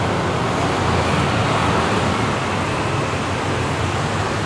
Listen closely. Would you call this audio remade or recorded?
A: recorded